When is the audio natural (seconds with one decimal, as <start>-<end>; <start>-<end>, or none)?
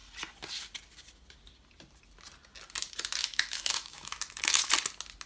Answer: 0.0-3.2; 4.7-5.3